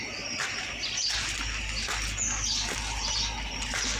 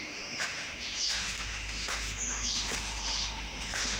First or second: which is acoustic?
first